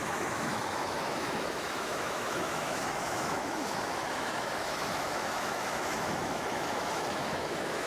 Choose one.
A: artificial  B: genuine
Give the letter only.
A